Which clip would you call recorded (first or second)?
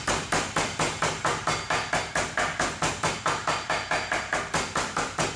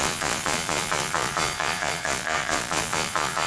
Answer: first